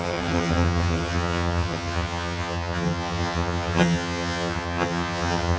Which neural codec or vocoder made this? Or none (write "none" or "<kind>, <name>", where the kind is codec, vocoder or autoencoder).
vocoder, HiFi-GAN